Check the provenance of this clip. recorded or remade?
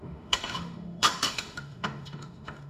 remade